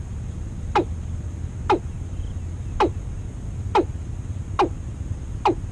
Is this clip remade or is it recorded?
recorded